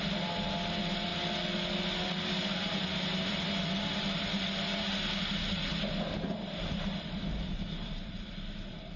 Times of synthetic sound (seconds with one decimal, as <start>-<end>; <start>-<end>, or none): none